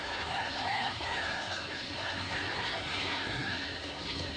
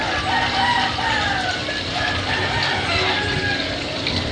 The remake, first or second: first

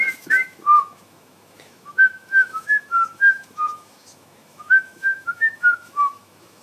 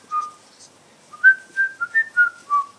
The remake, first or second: first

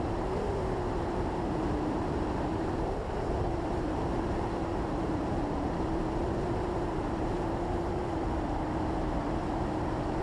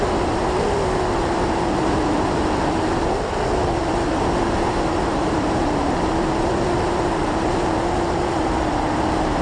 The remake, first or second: first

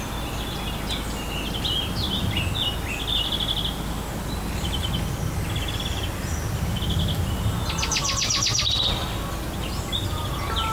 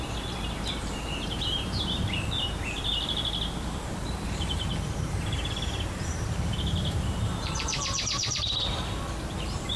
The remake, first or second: second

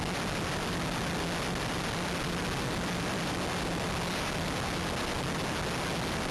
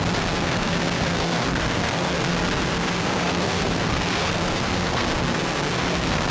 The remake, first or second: second